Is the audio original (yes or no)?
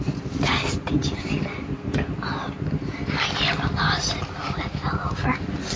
yes